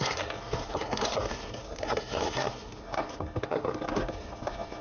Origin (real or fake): fake